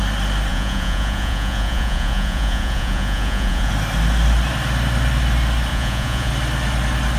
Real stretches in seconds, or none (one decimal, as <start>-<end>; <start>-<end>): 0.0-0.5; 3.7-5.7; 6.3-7.2